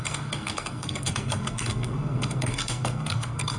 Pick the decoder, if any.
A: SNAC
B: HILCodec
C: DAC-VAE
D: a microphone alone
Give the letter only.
A